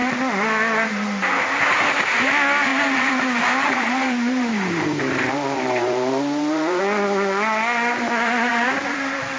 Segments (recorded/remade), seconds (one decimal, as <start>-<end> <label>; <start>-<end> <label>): 0.0-2.7 recorded; 2.7-6.8 remade; 6.8-8.5 recorded; 8.5-9.4 remade